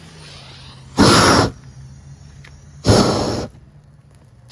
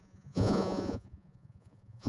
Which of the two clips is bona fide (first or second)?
first